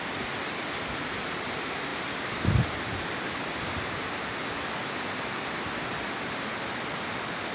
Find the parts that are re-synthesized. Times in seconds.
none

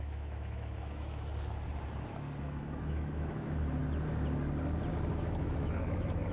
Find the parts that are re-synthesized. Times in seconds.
0.0-1.3 (autoencoder, DAC-VAE); 2.4-3.8; 5.1-6.3